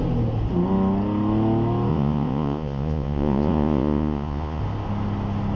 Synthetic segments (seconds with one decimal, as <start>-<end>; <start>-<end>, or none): 1.9-4.6

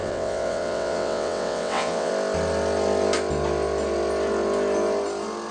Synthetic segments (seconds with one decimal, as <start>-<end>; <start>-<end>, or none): 0.0-2.1

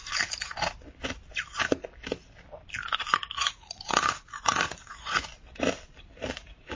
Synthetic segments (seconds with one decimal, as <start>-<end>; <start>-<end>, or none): 3.2-5.3; 6.3-6.8